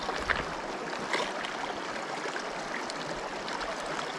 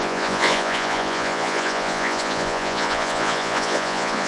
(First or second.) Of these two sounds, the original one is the first